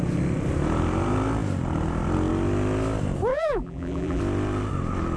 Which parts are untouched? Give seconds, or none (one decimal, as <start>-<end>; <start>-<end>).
0.0-3.3; 4.2-5.2

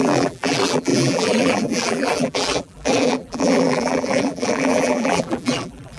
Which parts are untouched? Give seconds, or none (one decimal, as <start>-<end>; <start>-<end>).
none

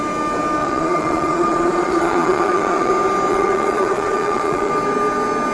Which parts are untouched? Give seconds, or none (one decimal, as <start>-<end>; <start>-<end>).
0.0-0.6; 2.9-3.3; 4.7-5.5